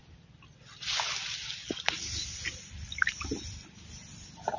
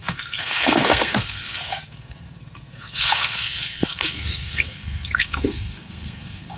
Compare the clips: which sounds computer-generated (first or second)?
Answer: second